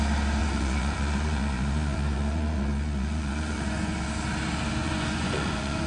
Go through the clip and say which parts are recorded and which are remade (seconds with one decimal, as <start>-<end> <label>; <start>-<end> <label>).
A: 0.0-0.4 recorded; 0.4-3.9 remade; 3.9-4.8 recorded; 4.8-5.9 remade